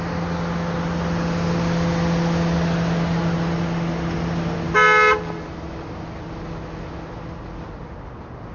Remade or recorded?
recorded